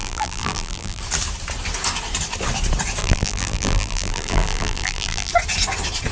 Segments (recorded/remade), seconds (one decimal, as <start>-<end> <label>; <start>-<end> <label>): 0.0-1.0 remade; 1.0-3.0 recorded; 3.0-5.3 remade; 5.3-6.1 recorded